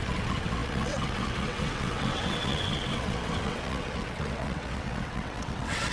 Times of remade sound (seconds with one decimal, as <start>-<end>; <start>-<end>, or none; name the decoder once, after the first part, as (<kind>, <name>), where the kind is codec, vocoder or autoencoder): 0.0-5.9 (vocoder, WaveNeXt)